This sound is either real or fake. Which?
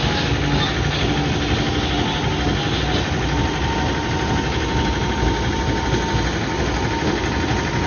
real